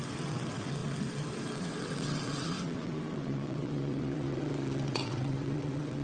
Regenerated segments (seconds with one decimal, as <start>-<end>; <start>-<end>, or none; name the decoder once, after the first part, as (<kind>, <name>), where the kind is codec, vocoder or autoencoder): 0.0-6.0 (vocoder, WaveNeXt)